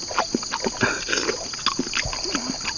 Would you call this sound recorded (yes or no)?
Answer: yes